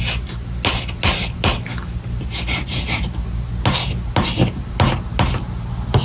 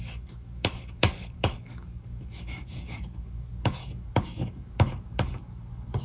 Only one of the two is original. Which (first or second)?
first